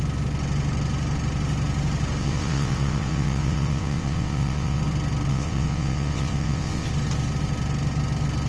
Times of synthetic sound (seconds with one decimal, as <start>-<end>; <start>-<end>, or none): 2.2-4.8; 5.3-6.9